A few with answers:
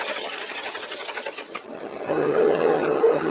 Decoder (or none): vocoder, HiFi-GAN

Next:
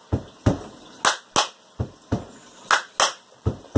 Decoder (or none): none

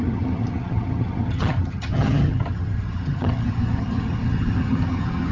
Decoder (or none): vocoder, HiFi-GAN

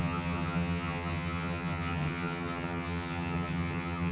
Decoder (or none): vocoder, HiFi-GAN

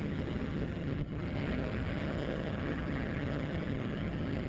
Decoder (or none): vocoder, HiFi-GAN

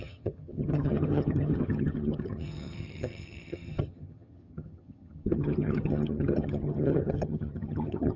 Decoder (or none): vocoder, HiFi-GAN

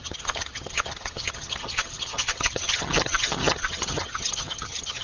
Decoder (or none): vocoder, HiFi-GAN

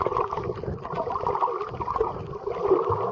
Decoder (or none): none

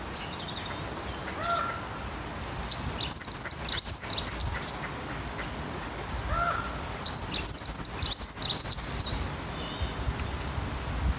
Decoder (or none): none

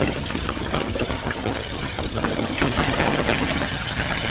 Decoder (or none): vocoder, HiFi-GAN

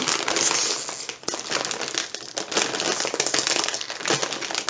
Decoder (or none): none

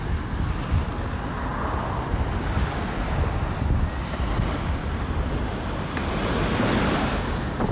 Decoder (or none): none